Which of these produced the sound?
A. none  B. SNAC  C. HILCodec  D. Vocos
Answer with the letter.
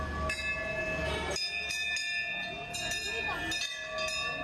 A